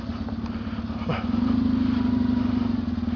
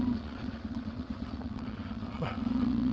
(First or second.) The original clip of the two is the first